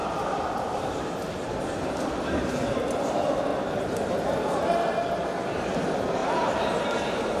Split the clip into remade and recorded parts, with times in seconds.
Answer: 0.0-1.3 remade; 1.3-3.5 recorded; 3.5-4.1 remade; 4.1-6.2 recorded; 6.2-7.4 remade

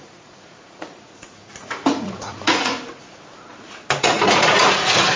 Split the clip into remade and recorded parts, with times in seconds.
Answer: 0.0-2.7 remade; 2.7-4.0 recorded; 4.0-5.2 remade

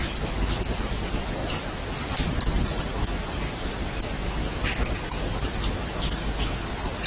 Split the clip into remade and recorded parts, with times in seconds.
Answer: 0.0-1.4 recorded; 1.4-5.4 remade; 5.4-7.1 recorded

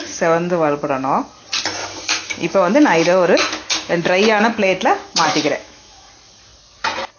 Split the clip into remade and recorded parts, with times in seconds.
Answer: 0.0-1.8 recorded; 1.8-6.1 remade; 6.1-7.2 recorded

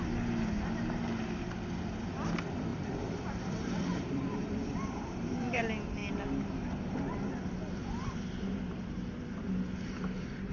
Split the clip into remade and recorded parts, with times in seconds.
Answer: 0.0-2.7 recorded; 2.7-5.6 remade; 5.6-10.5 recorded

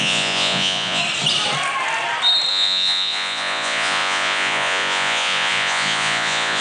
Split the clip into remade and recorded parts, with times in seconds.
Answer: 0.0-1.0 remade; 1.0-2.5 recorded; 2.5-6.6 remade

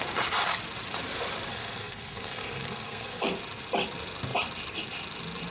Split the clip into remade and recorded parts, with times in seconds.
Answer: 0.0-1.5 recorded; 1.5-3.3 remade; 3.3-5.5 recorded

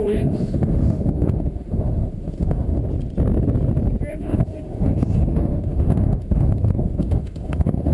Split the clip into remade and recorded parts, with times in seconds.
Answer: 0.0-2.8 remade; 2.8-4.1 recorded; 4.1-7.9 remade